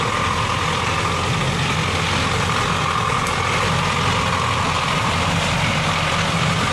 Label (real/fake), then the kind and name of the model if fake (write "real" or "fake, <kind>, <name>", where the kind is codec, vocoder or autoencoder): real